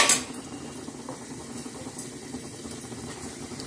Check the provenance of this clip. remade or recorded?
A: recorded